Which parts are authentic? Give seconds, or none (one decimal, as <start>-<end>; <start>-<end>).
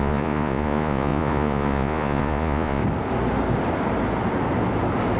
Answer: 2.8-5.2